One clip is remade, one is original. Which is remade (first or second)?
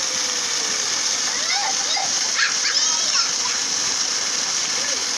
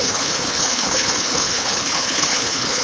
second